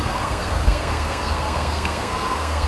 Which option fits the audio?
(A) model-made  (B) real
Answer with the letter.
A